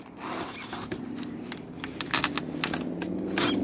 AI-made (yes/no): no